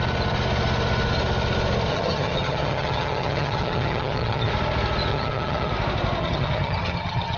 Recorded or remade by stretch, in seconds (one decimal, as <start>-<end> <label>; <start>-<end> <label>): 0.0-1.9 recorded; 1.9-4.5 remade; 4.5-5.1 recorded; 5.1-5.7 remade; 5.7-6.2 recorded; 6.2-7.4 remade